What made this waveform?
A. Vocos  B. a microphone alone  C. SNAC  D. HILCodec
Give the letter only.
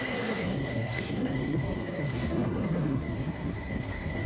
C